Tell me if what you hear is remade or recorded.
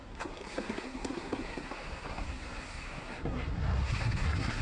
remade